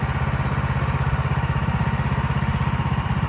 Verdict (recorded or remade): recorded